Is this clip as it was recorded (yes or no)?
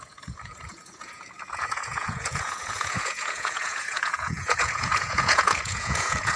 no